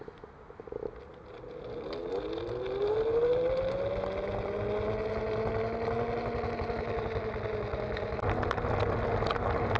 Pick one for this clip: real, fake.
real